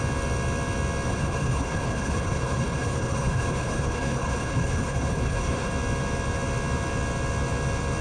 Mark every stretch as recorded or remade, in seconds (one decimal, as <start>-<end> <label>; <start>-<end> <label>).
0.0-1.1 recorded; 1.1-5.7 remade; 5.7-8.0 recorded

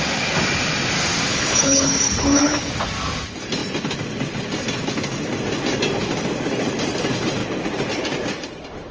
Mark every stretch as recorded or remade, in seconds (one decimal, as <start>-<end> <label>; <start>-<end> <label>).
0.0-1.3 recorded; 1.3-2.7 remade; 2.7-8.9 recorded